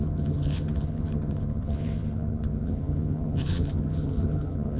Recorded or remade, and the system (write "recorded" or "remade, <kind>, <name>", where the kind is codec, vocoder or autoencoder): remade, vocoder, HiFi-GAN